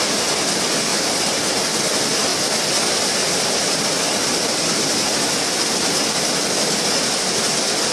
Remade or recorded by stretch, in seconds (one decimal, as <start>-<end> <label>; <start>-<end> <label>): 0.0-0.9 recorded; 0.9-1.6 remade; 1.6-7.9 recorded